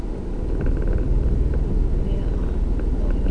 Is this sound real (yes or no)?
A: yes